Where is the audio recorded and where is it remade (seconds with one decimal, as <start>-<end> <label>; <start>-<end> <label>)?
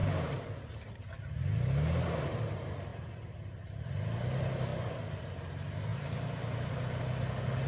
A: 0.0-4.7 recorded; 4.7-5.3 remade; 5.3-5.9 recorded; 5.9-7.0 remade; 7.0-7.7 recorded